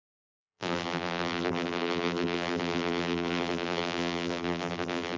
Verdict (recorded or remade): remade